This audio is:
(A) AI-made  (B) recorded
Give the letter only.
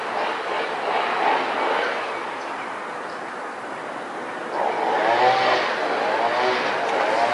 B